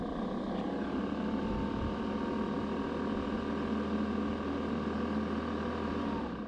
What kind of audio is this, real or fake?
real